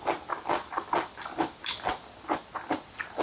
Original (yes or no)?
yes